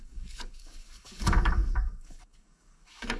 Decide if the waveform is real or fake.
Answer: fake